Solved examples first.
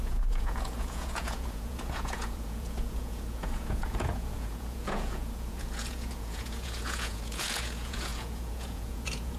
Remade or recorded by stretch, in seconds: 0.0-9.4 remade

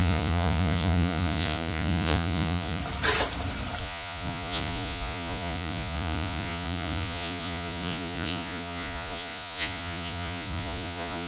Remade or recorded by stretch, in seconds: 0.0-2.8 remade; 2.8-3.8 recorded; 3.8-11.3 remade